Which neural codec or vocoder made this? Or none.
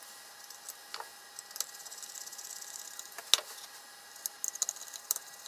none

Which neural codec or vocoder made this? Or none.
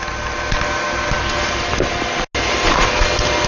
none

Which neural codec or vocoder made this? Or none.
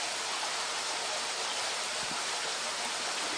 none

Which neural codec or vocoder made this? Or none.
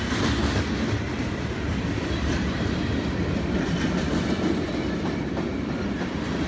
none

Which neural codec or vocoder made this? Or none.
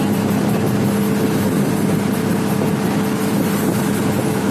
none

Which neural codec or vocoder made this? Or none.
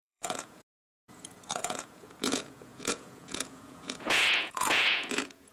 vocoder, Vocos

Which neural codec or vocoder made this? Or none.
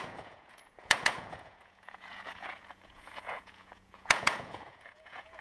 vocoder, Vocos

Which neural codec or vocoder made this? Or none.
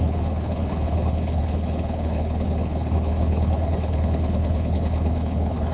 codec, HILCodec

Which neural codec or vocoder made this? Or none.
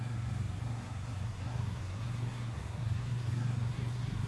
codec, SNAC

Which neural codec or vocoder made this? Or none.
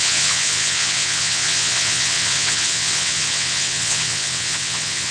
vocoder, WaveNeXt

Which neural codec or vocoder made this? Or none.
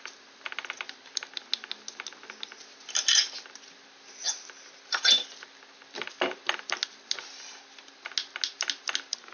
none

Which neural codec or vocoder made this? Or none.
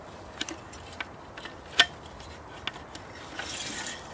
none